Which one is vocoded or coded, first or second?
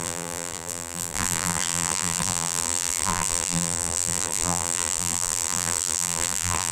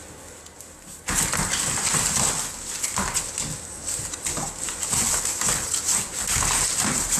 first